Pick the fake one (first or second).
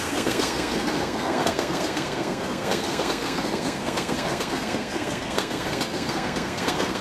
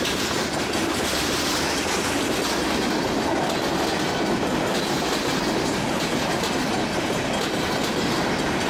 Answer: first